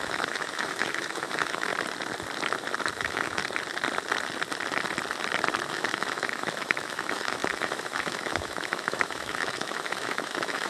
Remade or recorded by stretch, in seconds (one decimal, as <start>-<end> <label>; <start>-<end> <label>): 0.0-1.7 remade; 1.7-3.0 recorded; 3.0-3.4 remade; 3.4-5.7 recorded; 5.7-10.7 remade